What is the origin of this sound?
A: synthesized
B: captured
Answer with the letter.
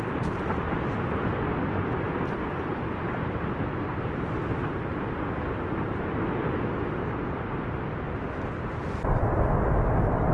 B